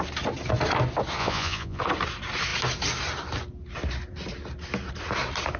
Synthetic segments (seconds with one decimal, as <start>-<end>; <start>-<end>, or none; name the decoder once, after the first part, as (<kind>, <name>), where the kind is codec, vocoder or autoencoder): 1.2-1.8 (vocoder, Vocos)